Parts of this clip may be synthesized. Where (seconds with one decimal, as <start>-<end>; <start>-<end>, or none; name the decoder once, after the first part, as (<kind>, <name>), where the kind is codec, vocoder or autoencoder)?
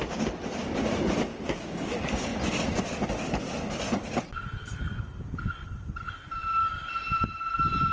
1.3-1.9 (codec, DAC)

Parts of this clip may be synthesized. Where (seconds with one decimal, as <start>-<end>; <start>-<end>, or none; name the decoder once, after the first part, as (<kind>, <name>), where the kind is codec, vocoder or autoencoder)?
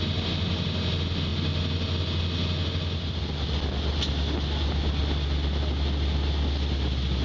none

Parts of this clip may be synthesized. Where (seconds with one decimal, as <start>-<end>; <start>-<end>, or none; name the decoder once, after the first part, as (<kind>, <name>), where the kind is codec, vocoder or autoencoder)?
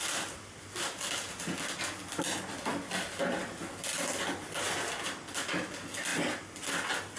none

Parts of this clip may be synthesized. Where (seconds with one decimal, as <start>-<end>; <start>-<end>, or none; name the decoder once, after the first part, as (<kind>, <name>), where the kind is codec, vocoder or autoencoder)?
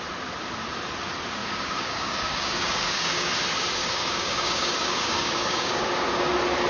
1.4-3.3 (codec, DAC); 3.8-6.3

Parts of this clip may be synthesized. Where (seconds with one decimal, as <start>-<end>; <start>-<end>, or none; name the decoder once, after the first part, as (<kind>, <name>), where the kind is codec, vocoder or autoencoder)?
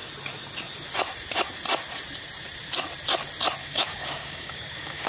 3.6-5.1 (codec, DAC)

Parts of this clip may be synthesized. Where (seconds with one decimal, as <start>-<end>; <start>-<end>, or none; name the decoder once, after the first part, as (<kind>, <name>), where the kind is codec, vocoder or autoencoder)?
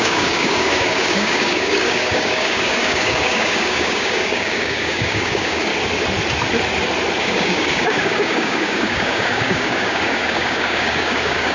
0.0-5.7 (codec, DAC); 7.2-11.5